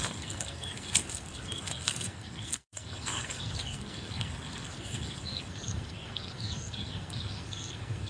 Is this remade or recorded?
remade